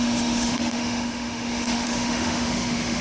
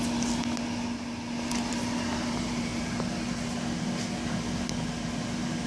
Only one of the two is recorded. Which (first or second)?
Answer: second